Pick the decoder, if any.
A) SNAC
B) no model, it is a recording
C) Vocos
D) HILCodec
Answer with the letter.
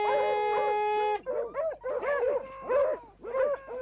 B